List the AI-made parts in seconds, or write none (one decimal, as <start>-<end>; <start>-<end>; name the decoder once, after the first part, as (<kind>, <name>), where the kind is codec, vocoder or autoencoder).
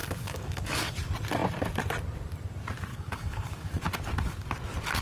0.0-0.9 (codec, DAC); 2.9-3.7